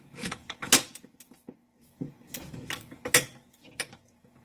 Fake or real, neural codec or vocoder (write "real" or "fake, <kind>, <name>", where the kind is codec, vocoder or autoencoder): fake, codec, DAC